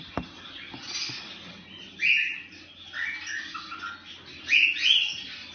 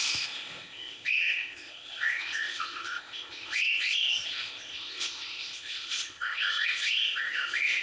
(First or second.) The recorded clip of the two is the first